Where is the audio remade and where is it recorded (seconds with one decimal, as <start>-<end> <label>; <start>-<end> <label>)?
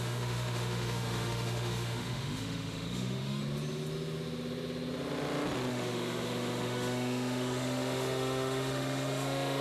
0.0-3.4 remade; 3.4-5.7 recorded; 5.7-9.6 remade